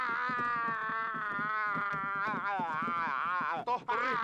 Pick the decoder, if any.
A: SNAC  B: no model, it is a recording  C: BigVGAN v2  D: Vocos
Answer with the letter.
B